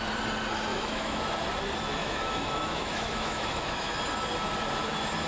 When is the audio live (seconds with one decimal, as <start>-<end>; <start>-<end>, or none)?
0.0-0.7; 1.2-2.0; 4.0-5.3